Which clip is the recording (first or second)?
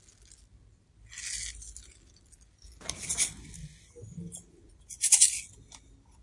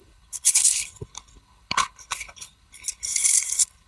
first